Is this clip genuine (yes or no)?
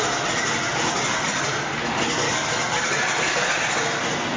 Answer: yes